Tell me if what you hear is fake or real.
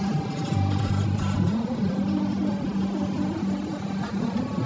real